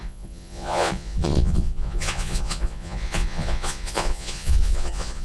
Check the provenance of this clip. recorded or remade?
remade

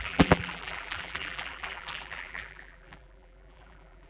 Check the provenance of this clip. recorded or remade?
remade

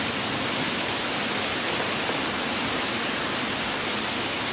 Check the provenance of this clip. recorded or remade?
recorded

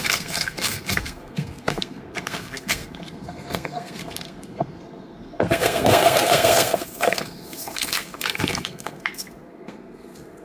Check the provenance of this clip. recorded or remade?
remade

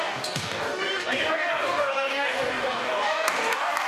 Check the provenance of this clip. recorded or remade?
remade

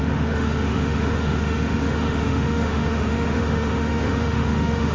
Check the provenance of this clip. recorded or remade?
remade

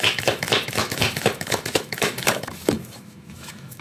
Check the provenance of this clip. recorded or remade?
remade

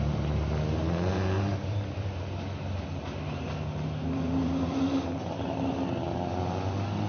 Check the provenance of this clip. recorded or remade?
recorded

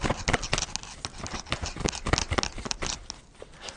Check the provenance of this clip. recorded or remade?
recorded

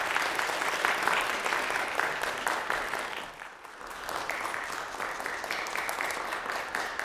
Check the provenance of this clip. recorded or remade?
recorded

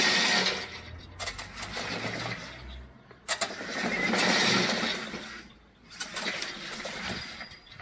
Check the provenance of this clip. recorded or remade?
recorded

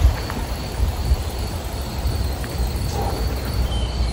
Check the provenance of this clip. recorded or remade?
remade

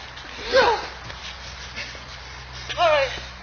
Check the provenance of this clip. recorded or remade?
recorded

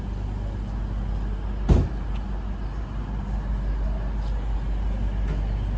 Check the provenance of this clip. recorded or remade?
recorded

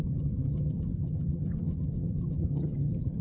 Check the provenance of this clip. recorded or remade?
remade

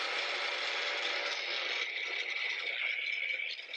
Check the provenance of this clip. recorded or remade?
recorded